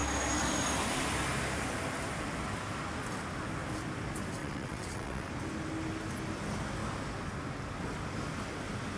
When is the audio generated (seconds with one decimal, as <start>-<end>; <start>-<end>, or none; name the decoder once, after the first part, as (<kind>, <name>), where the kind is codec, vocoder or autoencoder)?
4.4-5.3 (vocoder, WaveNeXt)